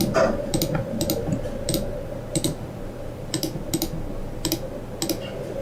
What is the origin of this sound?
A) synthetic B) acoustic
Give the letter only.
B